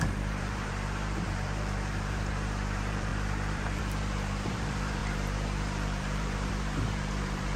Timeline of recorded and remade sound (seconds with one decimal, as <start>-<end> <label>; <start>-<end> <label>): 0.0-7.6 remade